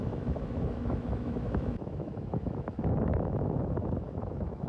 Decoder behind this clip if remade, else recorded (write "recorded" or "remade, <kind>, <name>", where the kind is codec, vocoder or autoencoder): remade, autoencoder, DAC-VAE